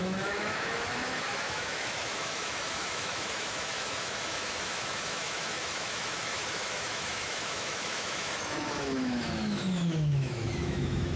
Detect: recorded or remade remade